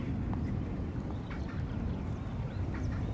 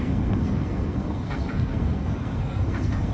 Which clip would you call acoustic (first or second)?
first